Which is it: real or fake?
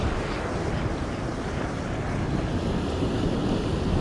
real